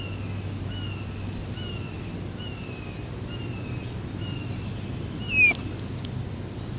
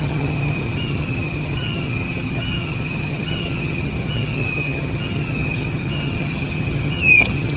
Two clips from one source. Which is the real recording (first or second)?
first